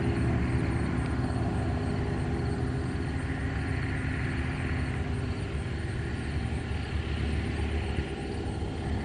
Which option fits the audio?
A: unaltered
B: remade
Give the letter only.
A